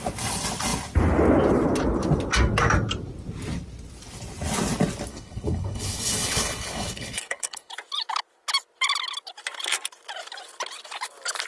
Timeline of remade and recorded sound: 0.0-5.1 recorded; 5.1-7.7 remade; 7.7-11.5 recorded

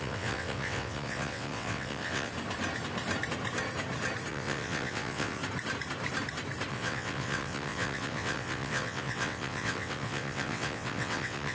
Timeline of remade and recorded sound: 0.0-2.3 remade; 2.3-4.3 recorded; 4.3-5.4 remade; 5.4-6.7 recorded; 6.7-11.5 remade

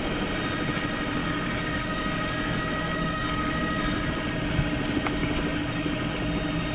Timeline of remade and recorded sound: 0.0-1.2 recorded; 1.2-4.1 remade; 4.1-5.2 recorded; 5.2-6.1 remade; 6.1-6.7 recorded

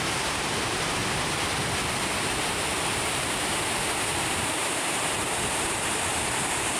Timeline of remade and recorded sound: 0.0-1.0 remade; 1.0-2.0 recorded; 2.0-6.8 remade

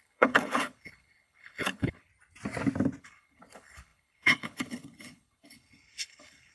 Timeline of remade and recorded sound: 0.0-2.1 remade; 2.1-3.0 recorded; 3.0-6.5 remade

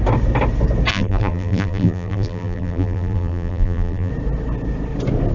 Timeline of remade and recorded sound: 0.0-0.9 recorded; 0.9-4.1 remade; 4.1-5.3 recorded

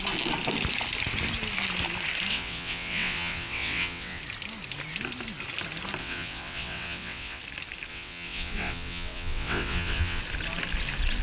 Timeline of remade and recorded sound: 0.0-2.3 recorded; 2.3-4.2 remade; 4.2-6.0 recorded; 6.0-7.4 remade; 7.4-7.9 recorded; 7.9-10.2 remade; 10.2-11.2 recorded

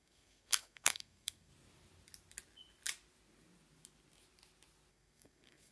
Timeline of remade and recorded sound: 0.0-1.5 remade; 1.5-4.9 recorded; 4.9-5.7 remade